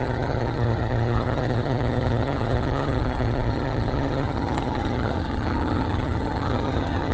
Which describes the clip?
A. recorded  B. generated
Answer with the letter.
B